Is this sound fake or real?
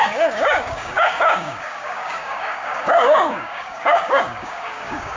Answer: fake